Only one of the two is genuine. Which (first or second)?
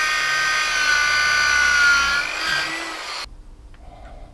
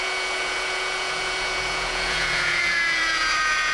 first